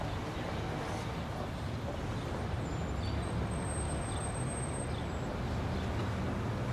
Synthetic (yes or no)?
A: no